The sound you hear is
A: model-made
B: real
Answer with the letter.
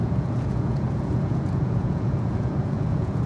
A